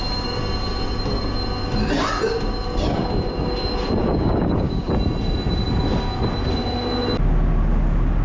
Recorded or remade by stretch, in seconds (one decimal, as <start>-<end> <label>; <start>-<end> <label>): 0.0-4.0 recorded; 4.0-4.9 remade; 4.9-8.2 recorded